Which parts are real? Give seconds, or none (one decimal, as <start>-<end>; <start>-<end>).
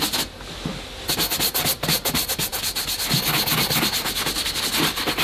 0.0-5.2